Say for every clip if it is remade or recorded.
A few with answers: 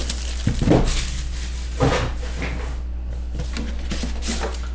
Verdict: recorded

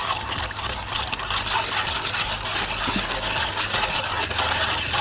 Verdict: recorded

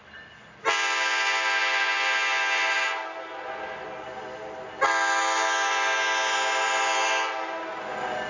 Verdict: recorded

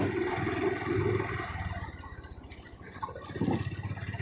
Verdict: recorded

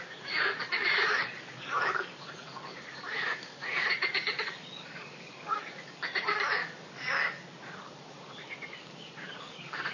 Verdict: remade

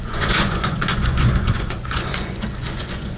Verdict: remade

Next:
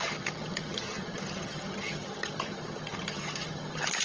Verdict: remade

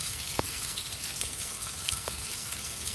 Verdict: remade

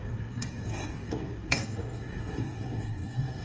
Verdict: remade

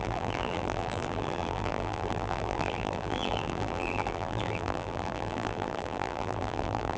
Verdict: remade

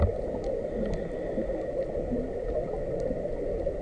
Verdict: recorded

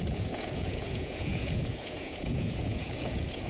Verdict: remade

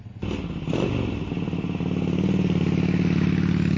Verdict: recorded